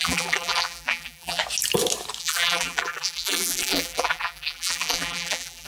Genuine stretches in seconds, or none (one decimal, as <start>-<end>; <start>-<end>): 1.4-2.2